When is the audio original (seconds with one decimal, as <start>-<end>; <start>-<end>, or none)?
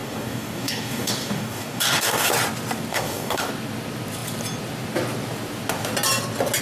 2.3-2.9; 3.5-6.6